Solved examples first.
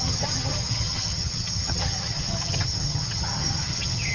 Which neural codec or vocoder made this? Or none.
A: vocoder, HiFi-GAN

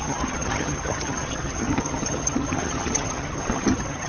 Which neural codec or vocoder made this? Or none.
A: vocoder, HiFi-GAN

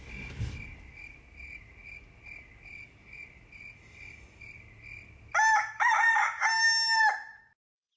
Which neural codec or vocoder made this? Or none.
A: none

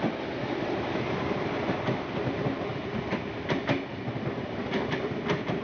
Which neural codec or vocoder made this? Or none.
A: none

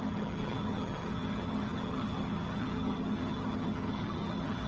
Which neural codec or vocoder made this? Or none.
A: vocoder, HiFi-GAN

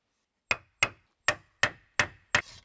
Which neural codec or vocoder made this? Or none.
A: none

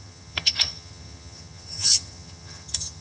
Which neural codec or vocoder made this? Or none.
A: vocoder, HiFi-GAN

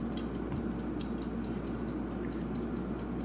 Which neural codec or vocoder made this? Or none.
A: none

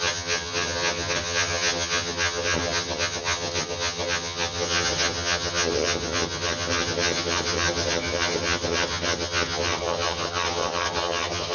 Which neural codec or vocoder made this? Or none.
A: vocoder, HiFi-GAN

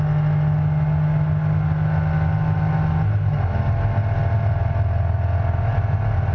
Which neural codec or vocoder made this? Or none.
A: none